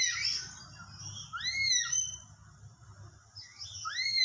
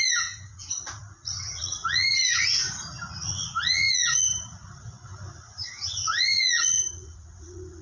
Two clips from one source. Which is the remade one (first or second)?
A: second